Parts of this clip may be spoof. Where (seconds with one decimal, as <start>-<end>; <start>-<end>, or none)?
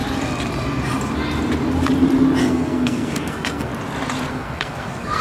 2.4-3.7; 4.3-5.2